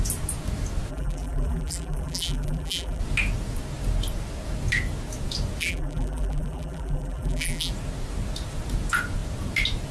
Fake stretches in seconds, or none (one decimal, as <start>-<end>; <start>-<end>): 0.9-3.0; 5.6-7.7